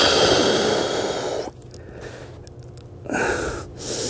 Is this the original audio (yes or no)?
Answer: yes